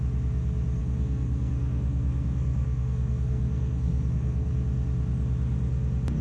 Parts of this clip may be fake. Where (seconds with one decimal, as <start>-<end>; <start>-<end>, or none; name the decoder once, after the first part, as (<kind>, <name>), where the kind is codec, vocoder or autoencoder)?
0.8-4.5 (codec, SNAC)